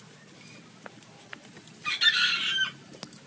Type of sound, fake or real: real